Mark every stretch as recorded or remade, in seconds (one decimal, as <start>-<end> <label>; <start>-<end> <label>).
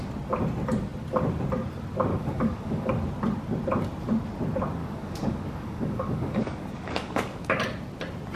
0.0-2.1 recorded; 2.1-2.9 remade; 2.9-4.8 recorded; 4.8-7.6 remade; 7.6-8.4 recorded